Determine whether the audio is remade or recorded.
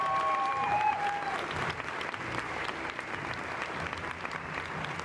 remade